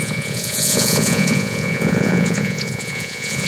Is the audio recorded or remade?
remade